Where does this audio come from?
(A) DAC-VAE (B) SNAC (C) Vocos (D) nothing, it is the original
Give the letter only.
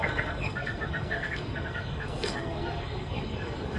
B